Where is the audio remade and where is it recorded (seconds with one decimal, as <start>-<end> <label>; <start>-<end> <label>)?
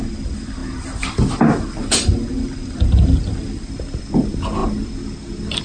0.0-5.6 recorded